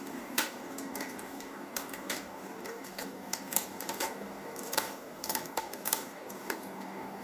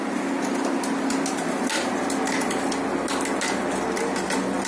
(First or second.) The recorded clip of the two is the second